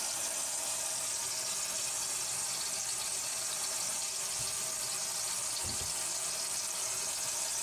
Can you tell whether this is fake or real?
real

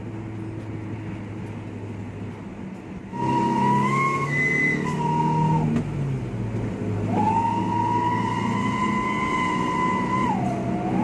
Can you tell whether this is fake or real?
real